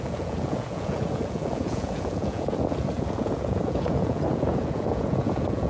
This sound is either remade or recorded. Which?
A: remade